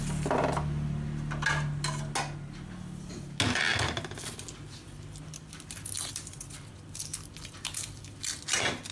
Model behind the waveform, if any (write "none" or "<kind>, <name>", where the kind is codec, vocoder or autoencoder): none